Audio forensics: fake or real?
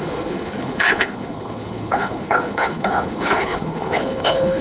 fake